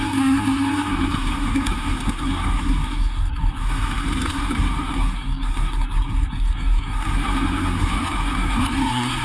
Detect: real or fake fake